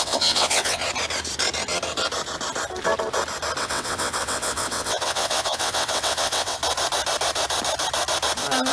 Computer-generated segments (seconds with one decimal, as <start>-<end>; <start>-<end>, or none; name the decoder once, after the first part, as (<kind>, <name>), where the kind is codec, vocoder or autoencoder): 0.0-0.8 (vocoder, WaveNeXt); 3.6-6.6